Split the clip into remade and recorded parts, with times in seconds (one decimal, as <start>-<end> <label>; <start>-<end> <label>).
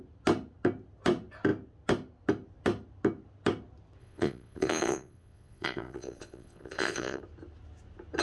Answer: 0.0-4.0 recorded; 4.0-7.2 remade; 7.2-8.2 recorded